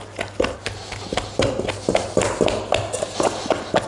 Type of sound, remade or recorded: recorded